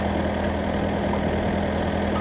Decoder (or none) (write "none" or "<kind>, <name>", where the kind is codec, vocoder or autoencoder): none